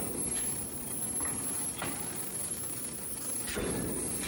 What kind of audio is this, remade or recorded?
recorded